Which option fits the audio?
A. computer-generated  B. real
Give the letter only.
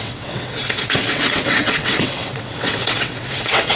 A